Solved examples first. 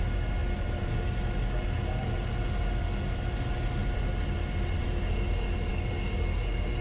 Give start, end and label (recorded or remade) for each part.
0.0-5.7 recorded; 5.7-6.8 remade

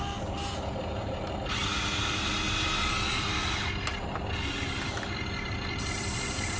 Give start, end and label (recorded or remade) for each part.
0.0-6.6 recorded

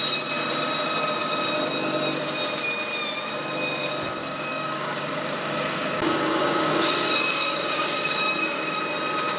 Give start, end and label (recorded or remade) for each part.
0.0-4.2 recorded; 4.2-8.8 remade; 8.8-9.4 recorded